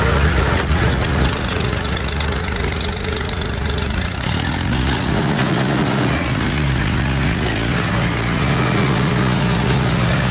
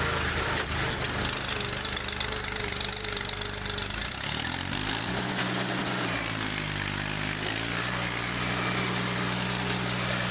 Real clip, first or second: second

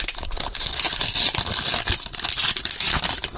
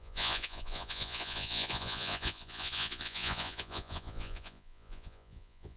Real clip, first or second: first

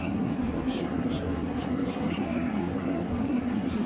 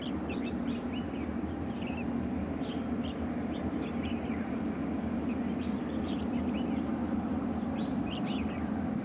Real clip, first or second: second